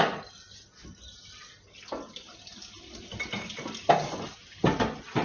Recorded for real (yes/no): yes